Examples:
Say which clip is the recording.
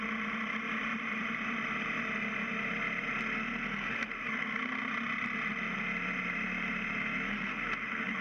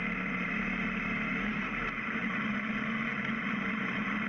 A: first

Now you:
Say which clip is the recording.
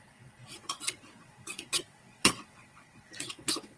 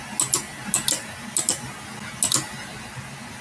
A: second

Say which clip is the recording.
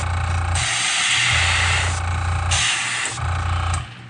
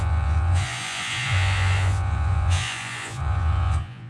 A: first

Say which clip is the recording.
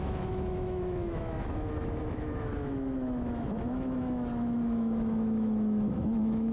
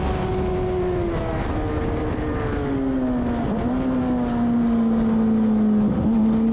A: second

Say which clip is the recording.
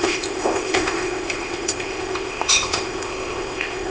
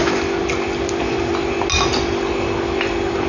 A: second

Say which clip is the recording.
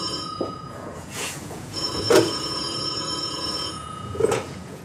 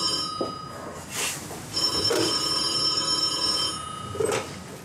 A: second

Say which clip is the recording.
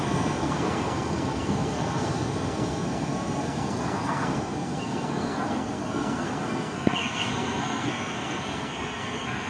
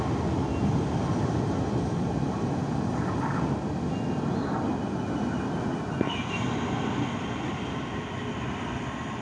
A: second